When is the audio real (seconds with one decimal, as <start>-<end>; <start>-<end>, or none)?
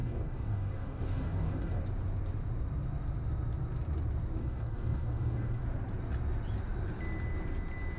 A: 1.8-4.4; 5.6-8.0